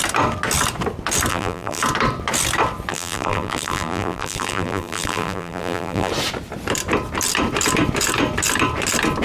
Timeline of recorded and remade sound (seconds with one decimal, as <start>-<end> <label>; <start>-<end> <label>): 0.0-1.3 recorded; 1.3-1.8 remade; 1.8-2.9 recorded; 2.9-6.1 remade; 6.1-9.2 recorded